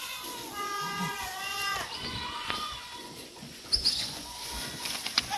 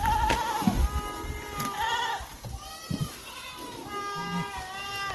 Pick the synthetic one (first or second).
first